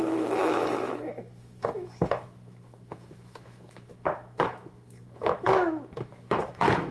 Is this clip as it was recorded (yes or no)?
no